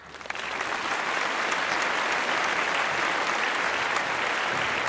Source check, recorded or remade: recorded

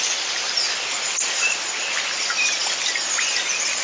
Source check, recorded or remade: recorded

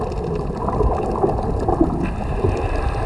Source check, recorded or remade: recorded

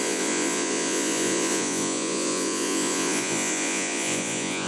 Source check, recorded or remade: remade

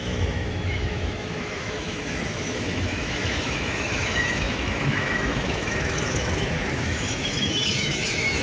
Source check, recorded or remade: remade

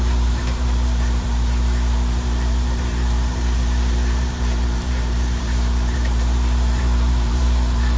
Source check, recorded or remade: remade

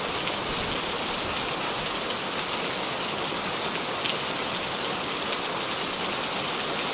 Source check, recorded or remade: recorded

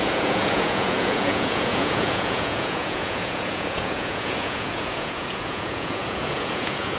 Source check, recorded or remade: remade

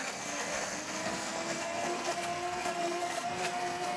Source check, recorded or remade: remade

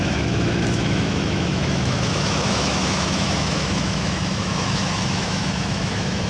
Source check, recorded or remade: remade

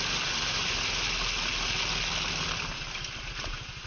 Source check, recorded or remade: recorded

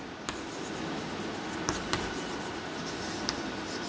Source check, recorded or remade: recorded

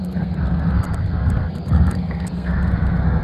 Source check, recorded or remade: remade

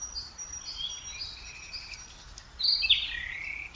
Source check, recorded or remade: recorded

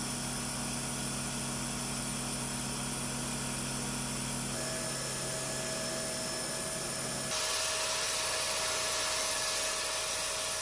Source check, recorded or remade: recorded